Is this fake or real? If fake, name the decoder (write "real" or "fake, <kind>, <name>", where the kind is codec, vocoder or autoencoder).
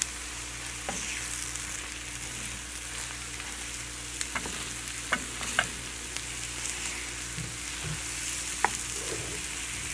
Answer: real